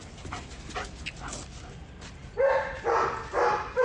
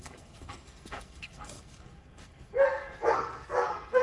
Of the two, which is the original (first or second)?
first